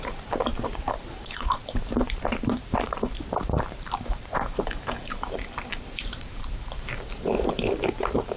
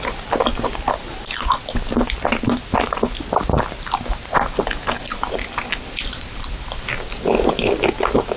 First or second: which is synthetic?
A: first